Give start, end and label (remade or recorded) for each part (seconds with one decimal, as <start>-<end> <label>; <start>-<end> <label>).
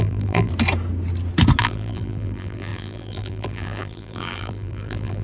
0.0-0.5 remade; 0.5-1.6 recorded; 1.6-5.2 remade